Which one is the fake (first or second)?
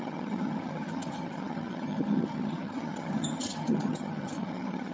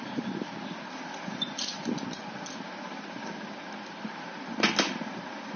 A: first